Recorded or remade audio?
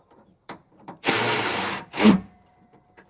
remade